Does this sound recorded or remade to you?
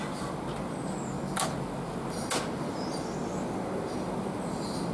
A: recorded